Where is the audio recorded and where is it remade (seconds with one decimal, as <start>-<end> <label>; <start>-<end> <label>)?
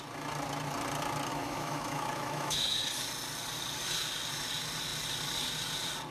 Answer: 0.0-1.3 recorded; 1.3-2.8 remade; 2.8-6.1 recorded